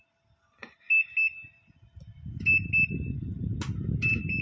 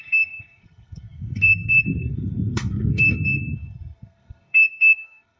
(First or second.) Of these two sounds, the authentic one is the first